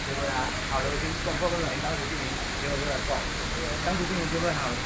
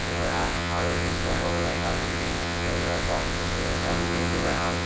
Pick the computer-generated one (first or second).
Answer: second